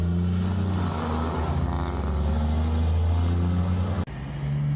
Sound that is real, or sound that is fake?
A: real